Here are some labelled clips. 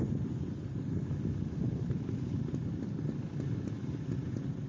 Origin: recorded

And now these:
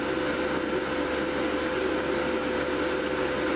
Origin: recorded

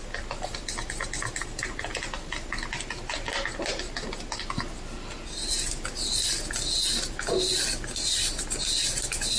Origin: recorded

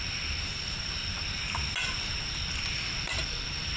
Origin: recorded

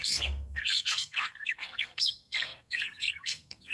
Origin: remade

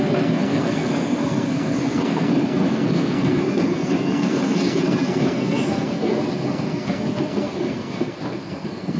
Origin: remade